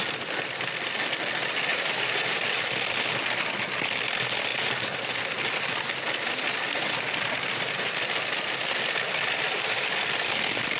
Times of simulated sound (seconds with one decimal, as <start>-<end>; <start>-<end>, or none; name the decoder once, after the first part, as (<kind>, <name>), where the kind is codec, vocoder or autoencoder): 1.7-2.4 (vocoder, BigVGAN v2)